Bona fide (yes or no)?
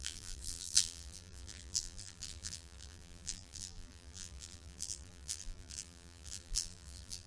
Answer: no